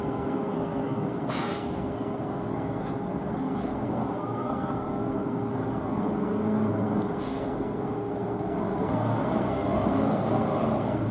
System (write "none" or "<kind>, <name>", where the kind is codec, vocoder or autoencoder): codec, SNAC